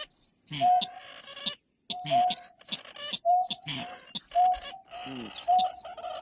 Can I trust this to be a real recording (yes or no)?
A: yes